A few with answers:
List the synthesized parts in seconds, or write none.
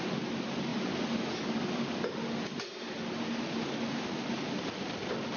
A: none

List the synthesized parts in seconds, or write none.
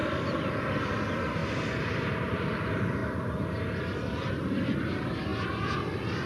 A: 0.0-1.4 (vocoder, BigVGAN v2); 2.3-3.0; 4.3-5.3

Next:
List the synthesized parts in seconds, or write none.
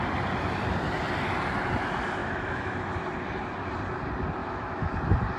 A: 2.2-2.9 (autoencoder, DAC-VAE); 4.4-4.9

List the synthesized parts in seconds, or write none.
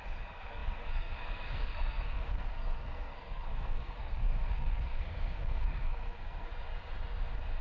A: 0.0-6.5 (codec, SNAC)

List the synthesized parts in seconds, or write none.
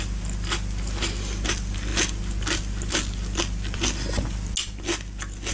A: none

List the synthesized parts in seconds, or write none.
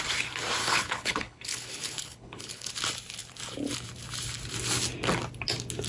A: 0.6-2.7 (codec, HILCodec)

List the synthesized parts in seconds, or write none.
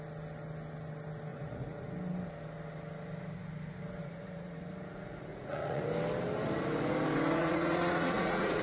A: 1.3-1.8 (vocoder, Vocos); 4.0-4.7; 5.3-5.8; 7.4-8.6